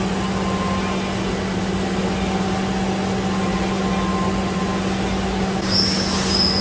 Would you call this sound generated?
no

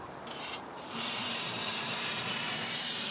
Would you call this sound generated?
yes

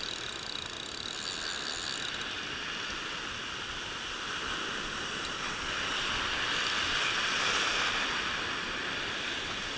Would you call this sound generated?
no